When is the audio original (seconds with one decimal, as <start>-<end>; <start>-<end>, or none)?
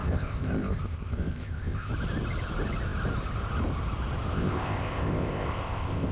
1.9-4.3